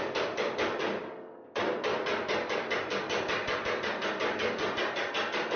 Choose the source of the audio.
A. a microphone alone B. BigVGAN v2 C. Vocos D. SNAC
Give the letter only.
A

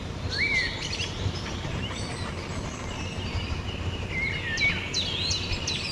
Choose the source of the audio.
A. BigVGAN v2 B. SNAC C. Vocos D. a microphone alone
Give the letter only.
D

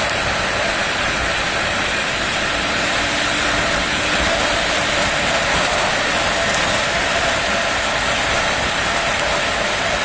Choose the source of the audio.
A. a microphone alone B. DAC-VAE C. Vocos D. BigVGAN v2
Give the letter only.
A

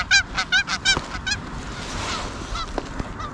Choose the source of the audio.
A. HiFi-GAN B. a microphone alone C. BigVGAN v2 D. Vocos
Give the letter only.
B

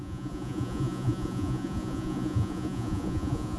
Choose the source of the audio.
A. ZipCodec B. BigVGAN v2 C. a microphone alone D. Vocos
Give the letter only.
D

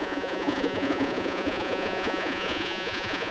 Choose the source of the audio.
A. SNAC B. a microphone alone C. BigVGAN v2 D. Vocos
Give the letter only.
D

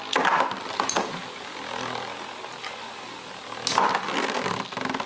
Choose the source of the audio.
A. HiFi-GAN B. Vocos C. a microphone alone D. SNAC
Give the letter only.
C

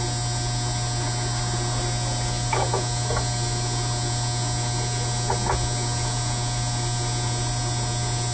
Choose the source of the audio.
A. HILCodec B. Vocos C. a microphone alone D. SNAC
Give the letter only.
C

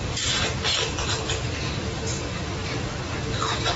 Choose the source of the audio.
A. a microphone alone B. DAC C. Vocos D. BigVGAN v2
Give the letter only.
A